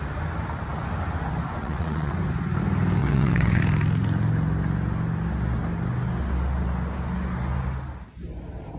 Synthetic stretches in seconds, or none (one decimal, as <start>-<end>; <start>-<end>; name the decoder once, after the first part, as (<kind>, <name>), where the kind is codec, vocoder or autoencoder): 1.6-2.1 (vocoder, WaveNeXt); 3.0-3.6